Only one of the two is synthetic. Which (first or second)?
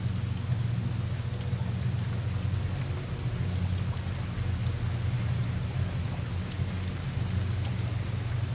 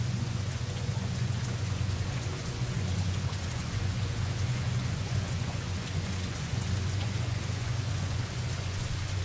second